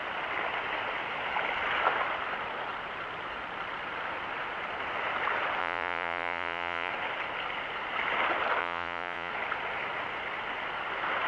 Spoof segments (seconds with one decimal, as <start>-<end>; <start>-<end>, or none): 5.6-6.9; 8.6-9.3